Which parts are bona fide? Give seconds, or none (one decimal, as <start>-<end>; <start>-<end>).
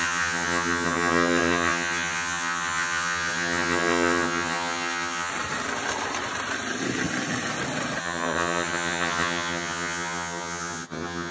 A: 5.3-8.0